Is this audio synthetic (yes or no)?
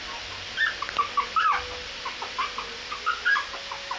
no